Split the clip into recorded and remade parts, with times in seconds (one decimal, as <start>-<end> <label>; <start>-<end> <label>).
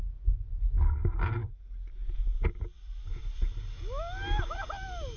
0.0-5.2 recorded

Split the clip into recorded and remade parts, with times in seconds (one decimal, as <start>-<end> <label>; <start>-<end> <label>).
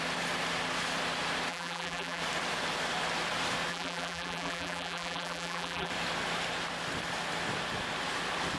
0.0-1.5 recorded; 1.5-2.2 remade; 2.2-3.7 recorded; 3.7-5.9 remade; 5.9-8.6 recorded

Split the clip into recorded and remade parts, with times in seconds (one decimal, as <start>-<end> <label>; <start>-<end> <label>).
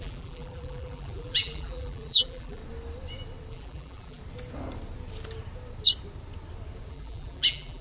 0.0-2.6 remade; 2.6-3.5 recorded; 3.5-4.2 remade; 4.2-6.9 recorded; 6.9-7.8 remade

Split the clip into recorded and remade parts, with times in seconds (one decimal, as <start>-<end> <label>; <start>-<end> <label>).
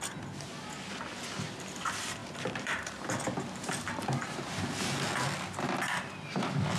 0.0-2.2 recorded; 2.2-3.0 remade; 3.0-6.8 recorded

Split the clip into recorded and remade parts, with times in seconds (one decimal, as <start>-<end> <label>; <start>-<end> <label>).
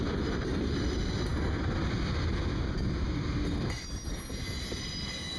0.0-5.4 recorded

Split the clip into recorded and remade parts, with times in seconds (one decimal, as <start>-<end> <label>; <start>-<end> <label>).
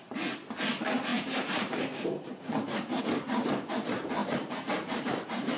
0.0-1.1 recorded; 1.1-3.0 remade; 3.0-4.2 recorded; 4.2-5.6 remade